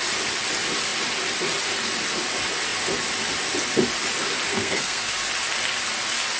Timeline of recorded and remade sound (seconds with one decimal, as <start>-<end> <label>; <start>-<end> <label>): 0.0-4.5 recorded; 4.5-5.1 remade; 5.1-6.4 recorded